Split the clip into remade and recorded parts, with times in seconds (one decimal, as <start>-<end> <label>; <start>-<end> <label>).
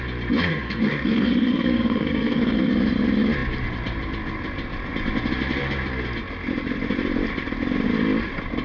0.0-0.5 recorded; 0.5-2.7 remade; 2.7-8.6 recorded